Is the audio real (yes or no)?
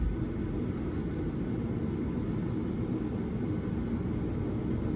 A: yes